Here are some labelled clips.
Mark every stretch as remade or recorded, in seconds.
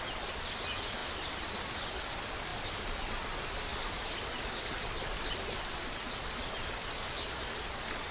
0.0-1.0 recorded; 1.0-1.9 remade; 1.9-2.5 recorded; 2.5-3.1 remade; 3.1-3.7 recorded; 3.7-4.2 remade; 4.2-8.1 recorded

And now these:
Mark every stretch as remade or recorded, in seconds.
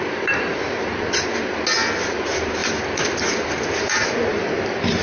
0.0-5.0 recorded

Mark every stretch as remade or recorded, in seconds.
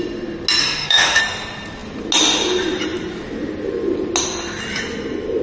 0.0-0.6 recorded; 0.6-1.2 remade; 1.2-5.4 recorded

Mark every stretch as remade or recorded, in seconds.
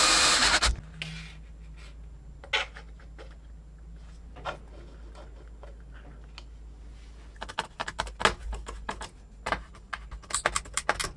0.0-11.2 recorded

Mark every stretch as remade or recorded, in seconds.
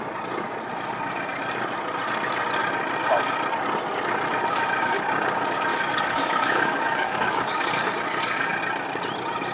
0.0-5.7 recorded; 5.7-7.8 remade; 7.8-9.5 recorded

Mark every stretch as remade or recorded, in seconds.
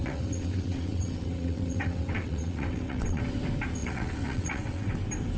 0.0-3.2 remade; 3.2-3.8 recorded; 3.8-4.9 remade; 4.9-5.4 recorded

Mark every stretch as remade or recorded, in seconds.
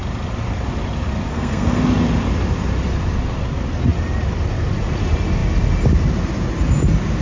0.0-1.3 recorded; 1.3-1.8 remade; 1.8-7.2 recorded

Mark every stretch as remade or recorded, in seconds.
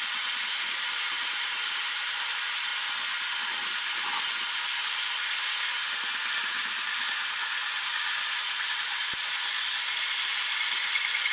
0.0-2.7 remade; 2.7-6.3 recorded; 6.3-9.0 remade; 9.0-10.1 recorded; 10.1-11.3 remade